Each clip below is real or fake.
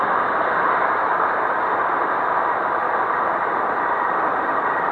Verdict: real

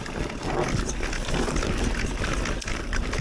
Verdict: real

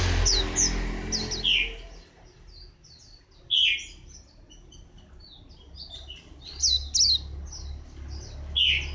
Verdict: real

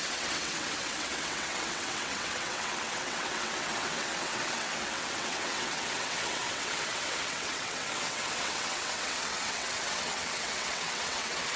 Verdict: fake